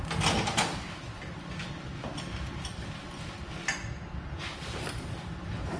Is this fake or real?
real